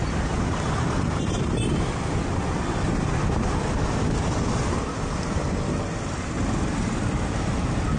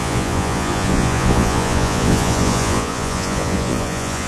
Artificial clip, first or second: second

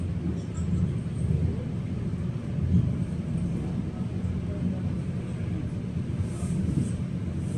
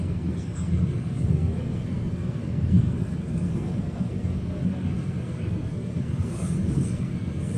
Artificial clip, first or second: second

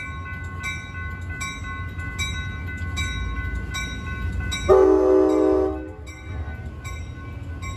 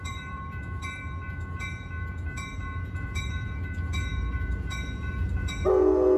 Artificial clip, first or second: second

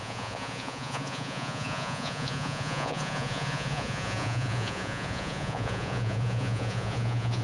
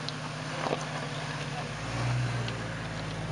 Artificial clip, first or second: first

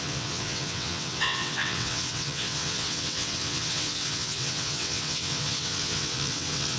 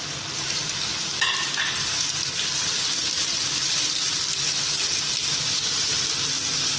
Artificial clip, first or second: first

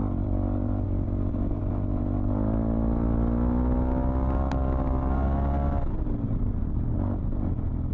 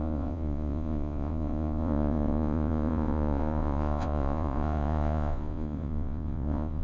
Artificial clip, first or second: second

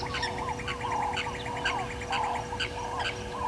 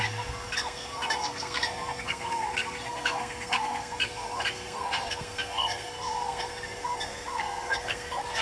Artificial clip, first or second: second